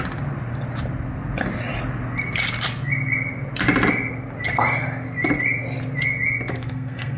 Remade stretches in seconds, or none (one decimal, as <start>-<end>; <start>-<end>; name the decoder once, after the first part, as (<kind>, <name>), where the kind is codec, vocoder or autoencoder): 6.5-7.2 (codec, SNAC)